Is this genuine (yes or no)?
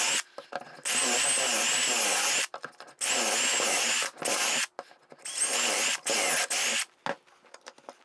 yes